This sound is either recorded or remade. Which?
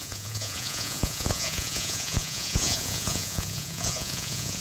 remade